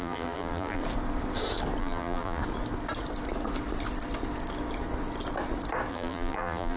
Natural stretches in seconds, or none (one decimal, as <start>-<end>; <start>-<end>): 0.8-1.8; 2.4-5.9